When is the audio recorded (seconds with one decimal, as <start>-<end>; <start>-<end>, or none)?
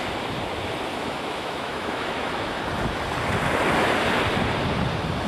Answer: 0.0-0.9; 2.6-5.3